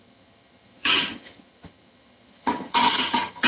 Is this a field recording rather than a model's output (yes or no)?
no